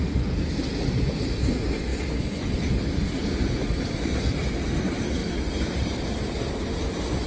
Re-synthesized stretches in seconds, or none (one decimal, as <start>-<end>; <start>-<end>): 3.2-4.4; 5.2-6.3